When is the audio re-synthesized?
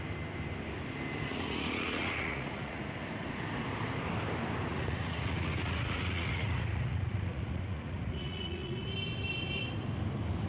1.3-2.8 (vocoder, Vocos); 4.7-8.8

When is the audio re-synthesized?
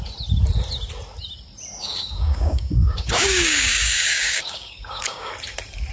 1.8-5.3 (codec, DAC)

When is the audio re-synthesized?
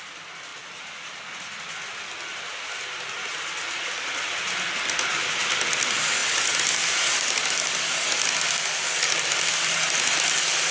none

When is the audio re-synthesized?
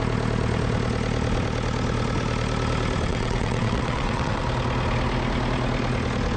3.1-4.4 (vocoder, WaveNeXt)